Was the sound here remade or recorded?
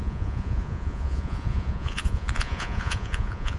remade